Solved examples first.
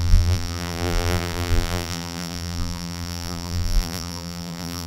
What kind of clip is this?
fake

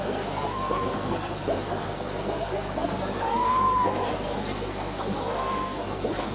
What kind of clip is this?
fake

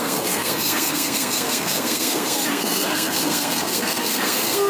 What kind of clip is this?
fake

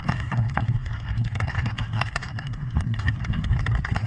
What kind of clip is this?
fake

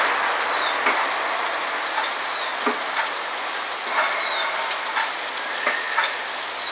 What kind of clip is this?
real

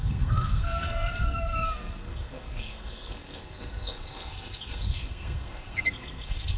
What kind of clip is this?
fake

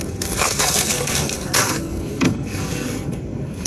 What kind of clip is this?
fake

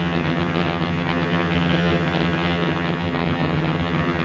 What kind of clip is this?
fake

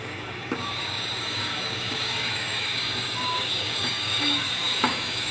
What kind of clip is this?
fake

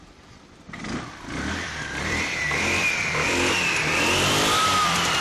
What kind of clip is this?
fake